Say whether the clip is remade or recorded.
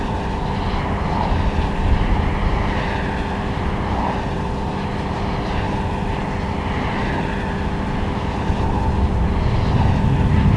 recorded